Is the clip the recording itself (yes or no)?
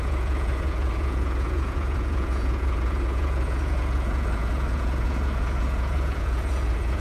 no